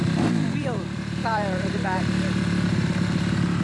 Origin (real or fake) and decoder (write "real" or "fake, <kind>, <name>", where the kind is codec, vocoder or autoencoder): fake, vocoder, BigVGAN v2